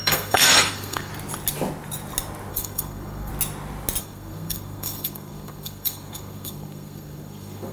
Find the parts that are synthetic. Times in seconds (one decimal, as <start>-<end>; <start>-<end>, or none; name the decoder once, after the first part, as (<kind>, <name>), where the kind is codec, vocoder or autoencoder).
0.0-1.1 (codec, SNAC); 2.5-3.3; 4.0-7.7